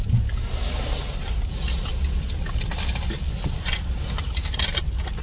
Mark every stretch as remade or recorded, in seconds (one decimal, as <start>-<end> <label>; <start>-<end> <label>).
0.0-5.2 recorded